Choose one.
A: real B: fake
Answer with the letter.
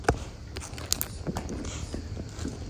A